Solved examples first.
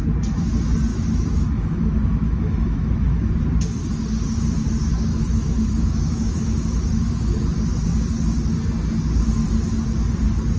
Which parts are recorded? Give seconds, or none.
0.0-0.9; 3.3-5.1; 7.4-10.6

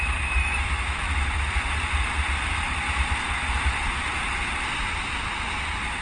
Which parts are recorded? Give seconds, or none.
0.0-0.4; 1.5-6.0

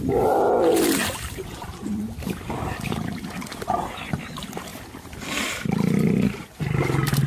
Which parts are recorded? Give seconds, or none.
0.0-7.3

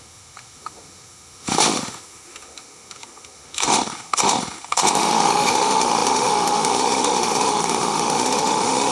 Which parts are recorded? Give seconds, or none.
none

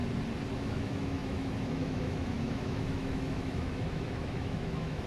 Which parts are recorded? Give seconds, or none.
0.0-0.6

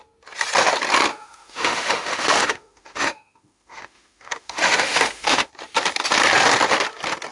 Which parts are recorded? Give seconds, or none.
0.0-1.1; 5.5-7.3